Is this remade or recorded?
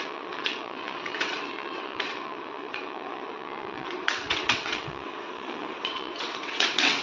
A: remade